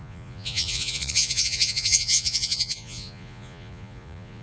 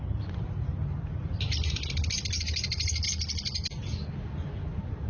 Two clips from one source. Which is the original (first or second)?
second